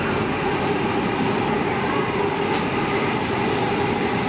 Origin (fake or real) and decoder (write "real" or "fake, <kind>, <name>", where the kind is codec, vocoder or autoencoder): real